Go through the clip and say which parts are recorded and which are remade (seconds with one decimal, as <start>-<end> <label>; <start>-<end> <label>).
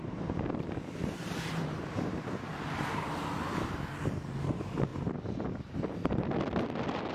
0.0-2.5 remade; 2.5-4.4 recorded; 4.4-4.9 remade; 4.9-7.1 recorded